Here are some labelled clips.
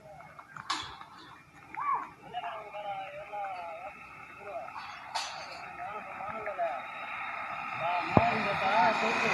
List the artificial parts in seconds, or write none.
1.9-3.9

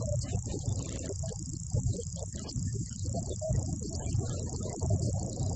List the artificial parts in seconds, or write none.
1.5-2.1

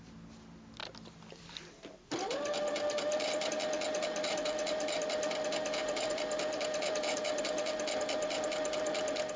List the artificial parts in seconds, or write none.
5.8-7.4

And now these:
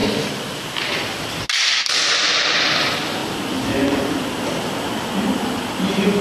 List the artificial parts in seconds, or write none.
0.0-0.9

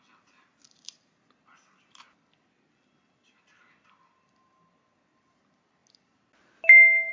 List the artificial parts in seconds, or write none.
none

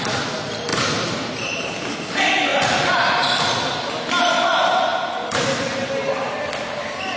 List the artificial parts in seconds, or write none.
0.7-1.7; 2.5-3.3